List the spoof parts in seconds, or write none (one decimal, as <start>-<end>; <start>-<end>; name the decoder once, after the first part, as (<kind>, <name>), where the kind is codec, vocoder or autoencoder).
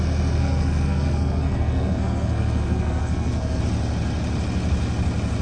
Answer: 0.4-3.6 (codec, SNAC)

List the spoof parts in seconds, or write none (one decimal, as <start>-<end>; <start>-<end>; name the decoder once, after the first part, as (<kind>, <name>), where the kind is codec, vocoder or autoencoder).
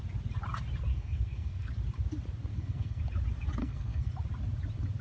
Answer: 0.9-1.7 (codec, SNAC); 2.5-3.0; 3.6-4.1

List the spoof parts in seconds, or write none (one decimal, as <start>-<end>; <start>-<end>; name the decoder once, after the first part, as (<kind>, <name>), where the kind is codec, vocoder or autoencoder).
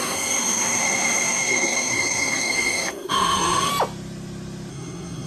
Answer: 0.0-3.7 (codec, SNAC); 4.7-5.3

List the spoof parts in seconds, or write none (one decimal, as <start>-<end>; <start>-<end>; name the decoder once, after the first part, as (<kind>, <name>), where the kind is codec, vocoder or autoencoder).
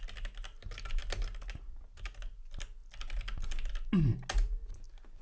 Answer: none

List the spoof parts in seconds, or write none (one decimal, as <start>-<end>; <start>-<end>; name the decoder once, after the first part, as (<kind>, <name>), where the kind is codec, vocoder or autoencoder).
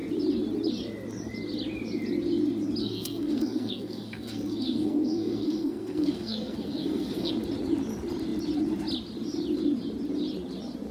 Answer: 2.8-7.3 (codec, SNAC)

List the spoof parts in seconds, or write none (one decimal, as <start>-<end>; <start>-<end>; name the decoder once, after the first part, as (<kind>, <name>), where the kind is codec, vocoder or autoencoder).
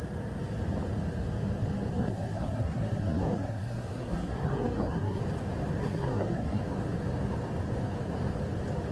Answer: 1.9-5.2 (codec, SNAC); 5.8-6.6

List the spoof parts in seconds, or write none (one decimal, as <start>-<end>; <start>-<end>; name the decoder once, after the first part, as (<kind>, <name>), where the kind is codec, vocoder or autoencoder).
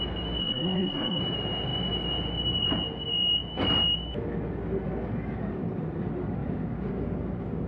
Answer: 0.4-1.2 (codec, SNAC)